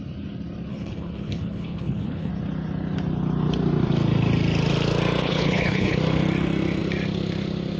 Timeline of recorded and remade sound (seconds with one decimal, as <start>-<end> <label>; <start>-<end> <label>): 0.0-0.7 recorded; 0.7-2.3 remade; 2.3-5.2 recorded; 5.2-6.0 remade; 6.0-7.8 recorded